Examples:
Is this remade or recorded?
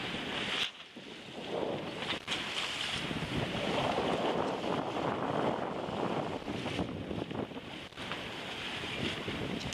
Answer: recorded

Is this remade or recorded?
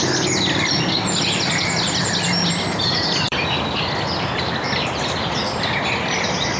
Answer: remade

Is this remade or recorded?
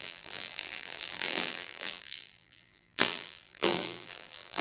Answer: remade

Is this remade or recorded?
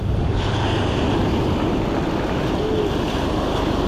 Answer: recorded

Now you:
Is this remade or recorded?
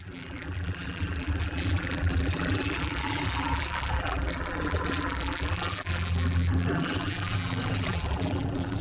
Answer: remade